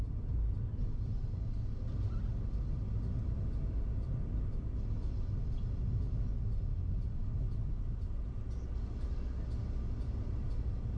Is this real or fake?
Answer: real